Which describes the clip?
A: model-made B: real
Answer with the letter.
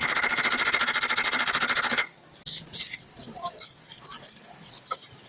B